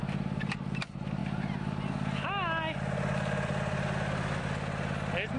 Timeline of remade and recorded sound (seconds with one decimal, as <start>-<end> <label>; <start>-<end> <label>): 0.0-5.4 recorded

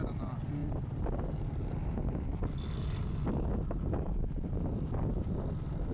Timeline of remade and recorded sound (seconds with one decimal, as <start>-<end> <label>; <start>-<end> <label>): 0.0-5.9 recorded

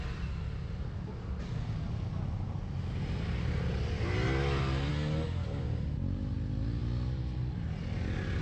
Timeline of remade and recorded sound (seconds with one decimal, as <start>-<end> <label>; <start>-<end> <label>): 0.0-8.4 recorded

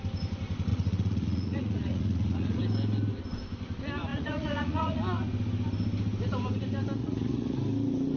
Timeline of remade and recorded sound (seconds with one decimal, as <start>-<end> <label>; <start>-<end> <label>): 0.0-0.7 recorded; 0.7-2.6 remade; 2.6-4.1 recorded; 4.1-5.0 remade; 5.0-7.0 recorded; 7.0-7.6 remade; 7.6-8.2 recorded

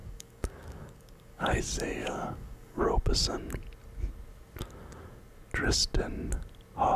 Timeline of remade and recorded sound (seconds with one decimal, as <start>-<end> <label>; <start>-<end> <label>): 0.0-1.6 remade; 1.6-2.0 recorded; 2.0-2.8 remade; 2.8-7.0 recorded

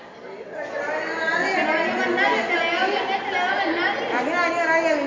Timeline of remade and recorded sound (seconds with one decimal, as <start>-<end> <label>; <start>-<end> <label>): 0.0-5.1 recorded